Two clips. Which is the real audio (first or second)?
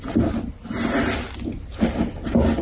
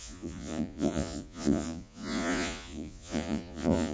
first